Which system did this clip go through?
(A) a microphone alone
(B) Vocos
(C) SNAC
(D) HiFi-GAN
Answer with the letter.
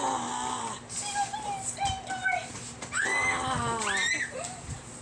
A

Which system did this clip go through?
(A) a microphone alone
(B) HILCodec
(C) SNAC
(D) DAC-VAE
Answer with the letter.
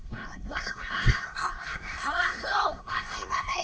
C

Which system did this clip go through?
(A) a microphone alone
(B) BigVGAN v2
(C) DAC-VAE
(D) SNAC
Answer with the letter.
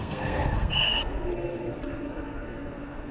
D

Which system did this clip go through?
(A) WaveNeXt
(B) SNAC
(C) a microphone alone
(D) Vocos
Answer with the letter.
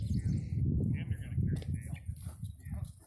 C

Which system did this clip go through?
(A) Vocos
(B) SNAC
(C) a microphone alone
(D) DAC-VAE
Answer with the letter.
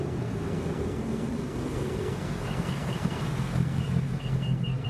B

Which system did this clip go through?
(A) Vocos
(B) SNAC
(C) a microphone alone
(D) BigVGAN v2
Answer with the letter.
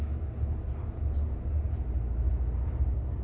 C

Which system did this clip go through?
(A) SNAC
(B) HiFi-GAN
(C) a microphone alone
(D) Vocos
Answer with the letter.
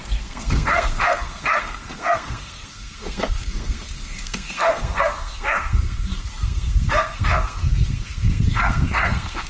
A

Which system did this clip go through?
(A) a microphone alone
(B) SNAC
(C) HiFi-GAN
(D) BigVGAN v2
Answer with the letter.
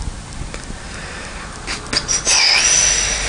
A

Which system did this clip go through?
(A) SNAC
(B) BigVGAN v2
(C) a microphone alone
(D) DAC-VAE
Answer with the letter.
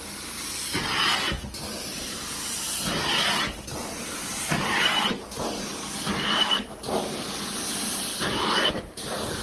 C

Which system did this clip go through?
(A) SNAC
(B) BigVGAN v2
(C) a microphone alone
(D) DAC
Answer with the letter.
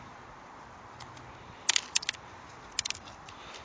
C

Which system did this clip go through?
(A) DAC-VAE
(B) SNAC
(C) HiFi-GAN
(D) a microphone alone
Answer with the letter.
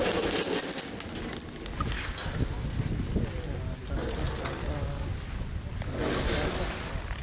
D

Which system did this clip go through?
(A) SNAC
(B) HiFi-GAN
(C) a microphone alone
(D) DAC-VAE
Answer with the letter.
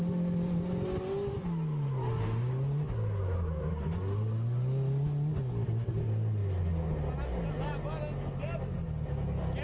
C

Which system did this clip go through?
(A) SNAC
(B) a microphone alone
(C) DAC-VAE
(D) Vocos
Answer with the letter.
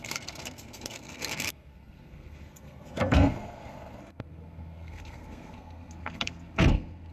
A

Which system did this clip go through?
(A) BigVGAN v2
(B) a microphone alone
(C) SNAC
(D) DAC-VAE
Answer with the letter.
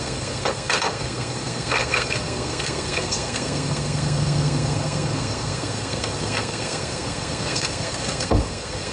C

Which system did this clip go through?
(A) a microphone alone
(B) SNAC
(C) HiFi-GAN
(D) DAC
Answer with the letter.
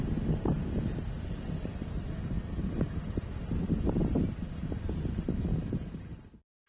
A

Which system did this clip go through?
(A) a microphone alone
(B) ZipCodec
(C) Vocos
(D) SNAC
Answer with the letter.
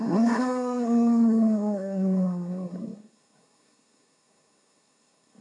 D